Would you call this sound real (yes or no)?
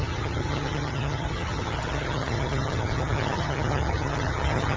no